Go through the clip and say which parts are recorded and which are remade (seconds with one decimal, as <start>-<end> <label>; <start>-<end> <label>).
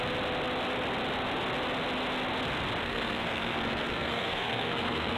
0.0-2.8 recorded; 2.8-5.2 remade